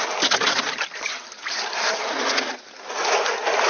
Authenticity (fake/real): real